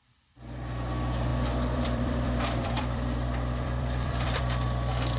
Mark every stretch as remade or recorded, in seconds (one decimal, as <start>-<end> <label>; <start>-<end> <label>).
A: 0.0-1.3 recorded; 1.3-4.4 remade; 4.4-5.2 recorded